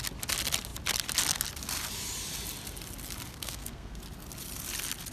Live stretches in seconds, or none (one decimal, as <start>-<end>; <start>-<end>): 0.0-3.3; 4.0-5.1